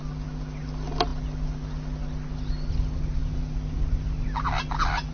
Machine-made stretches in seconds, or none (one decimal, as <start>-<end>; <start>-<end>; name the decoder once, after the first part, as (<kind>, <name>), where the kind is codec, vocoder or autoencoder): none